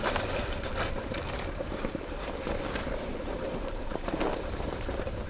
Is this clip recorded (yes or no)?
no